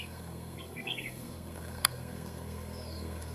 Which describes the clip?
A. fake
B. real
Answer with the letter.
A